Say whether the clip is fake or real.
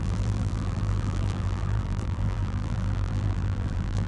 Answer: fake